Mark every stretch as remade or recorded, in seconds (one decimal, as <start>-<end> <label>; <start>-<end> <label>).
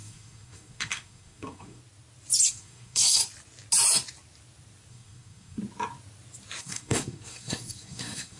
0.0-1.8 remade; 1.8-2.5 recorded; 2.5-3.2 remade; 3.2-4.9 recorded; 4.9-5.6 remade; 5.6-6.6 recorded; 6.6-8.4 remade